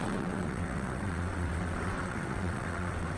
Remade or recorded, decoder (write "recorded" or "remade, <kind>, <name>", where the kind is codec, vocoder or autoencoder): remade, vocoder, WaveNeXt